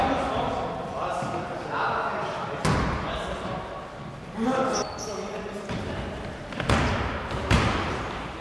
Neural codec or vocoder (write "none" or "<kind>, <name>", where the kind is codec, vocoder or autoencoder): none